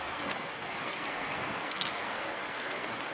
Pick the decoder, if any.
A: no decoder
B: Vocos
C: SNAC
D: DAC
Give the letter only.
C